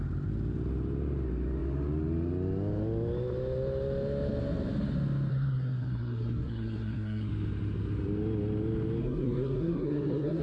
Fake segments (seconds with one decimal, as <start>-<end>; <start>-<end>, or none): 5.3-7.3; 9.0-10.4